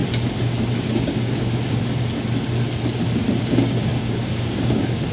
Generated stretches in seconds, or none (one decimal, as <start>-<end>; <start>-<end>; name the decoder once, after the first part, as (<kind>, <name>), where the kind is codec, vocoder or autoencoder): 0.6-1.8 (codec, DAC); 3.4-5.1